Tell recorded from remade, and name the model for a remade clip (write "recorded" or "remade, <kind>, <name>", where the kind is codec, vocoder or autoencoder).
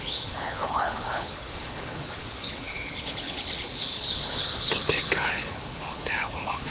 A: remade, codec, HILCodec